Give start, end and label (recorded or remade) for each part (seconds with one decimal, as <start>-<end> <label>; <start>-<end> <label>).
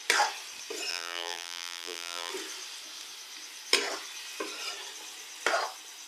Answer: 0.0-0.9 recorded; 0.9-2.3 remade; 2.3-6.1 recorded